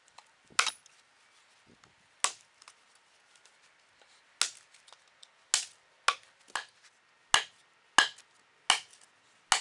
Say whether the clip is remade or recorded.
recorded